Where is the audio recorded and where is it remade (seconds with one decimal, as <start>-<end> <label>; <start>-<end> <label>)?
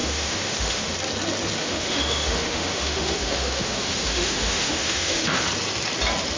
0.0-0.9 remade; 0.9-1.6 recorded; 1.6-5.4 remade; 5.4-6.4 recorded